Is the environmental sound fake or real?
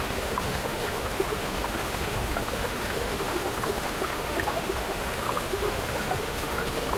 fake